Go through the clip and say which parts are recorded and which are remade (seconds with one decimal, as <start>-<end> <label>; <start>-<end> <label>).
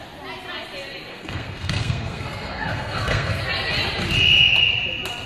0.0-1.1 recorded; 1.1-3.4 remade; 3.4-5.3 recorded